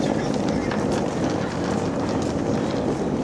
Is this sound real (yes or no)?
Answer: yes